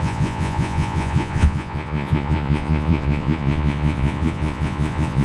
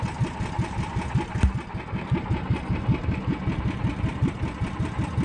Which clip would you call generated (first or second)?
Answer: first